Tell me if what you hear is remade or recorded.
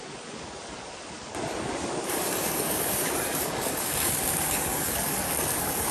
remade